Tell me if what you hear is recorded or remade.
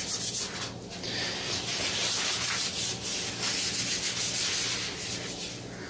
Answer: recorded